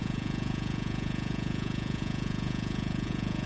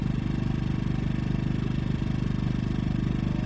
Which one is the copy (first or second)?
first